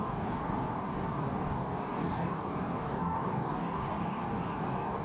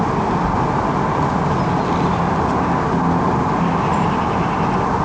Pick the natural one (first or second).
second